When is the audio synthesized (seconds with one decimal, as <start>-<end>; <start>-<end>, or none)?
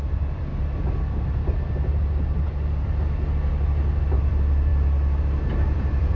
0.0-0.5; 4.2-4.7; 5.2-6.2